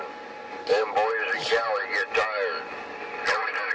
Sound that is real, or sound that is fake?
real